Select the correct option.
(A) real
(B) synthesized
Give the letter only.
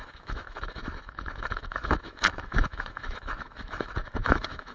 B